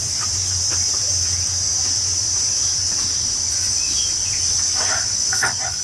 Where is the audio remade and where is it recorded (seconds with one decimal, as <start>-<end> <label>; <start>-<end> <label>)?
0.0-4.2 recorded; 4.2-5.0 remade; 5.0-5.8 recorded